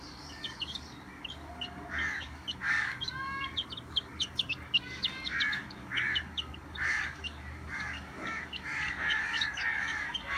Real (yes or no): no